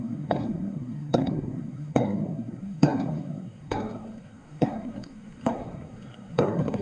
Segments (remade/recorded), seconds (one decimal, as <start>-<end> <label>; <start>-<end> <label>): 0.0-6.8 remade